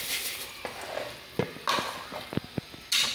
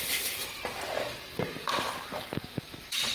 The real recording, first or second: first